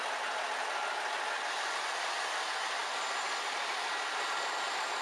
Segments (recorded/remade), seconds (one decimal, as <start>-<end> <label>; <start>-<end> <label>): 0.0-0.6 recorded; 0.6-1.9 remade; 1.9-2.8 recorded; 2.8-3.7 remade; 3.7-5.0 recorded